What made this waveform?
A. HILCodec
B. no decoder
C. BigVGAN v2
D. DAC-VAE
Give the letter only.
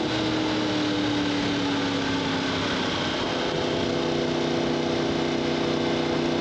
B